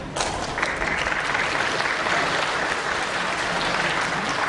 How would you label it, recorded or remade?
recorded